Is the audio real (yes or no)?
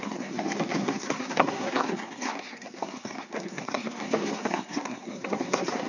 no